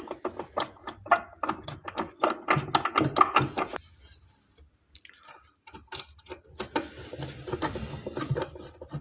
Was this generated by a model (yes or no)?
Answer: no